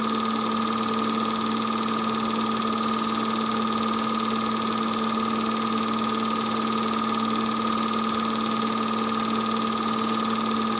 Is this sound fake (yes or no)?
no